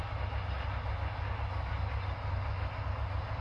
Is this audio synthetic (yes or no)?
no